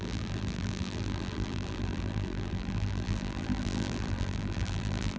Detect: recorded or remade remade